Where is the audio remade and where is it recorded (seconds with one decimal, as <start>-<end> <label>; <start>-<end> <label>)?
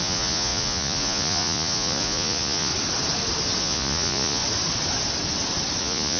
0.0-2.7 remade; 2.7-3.6 recorded; 3.6-4.4 remade; 4.4-5.8 recorded; 5.8-6.2 remade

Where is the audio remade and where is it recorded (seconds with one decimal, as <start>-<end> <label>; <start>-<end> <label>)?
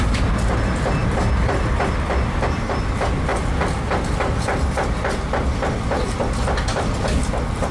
0.0-7.7 recorded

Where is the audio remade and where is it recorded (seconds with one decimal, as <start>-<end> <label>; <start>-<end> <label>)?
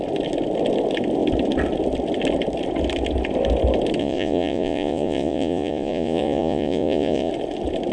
0.0-4.0 recorded; 4.0-7.3 remade; 7.3-7.9 recorded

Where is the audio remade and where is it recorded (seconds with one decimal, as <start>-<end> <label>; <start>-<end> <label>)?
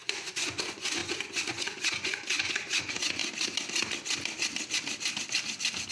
0.0-3.2 remade; 3.2-5.9 recorded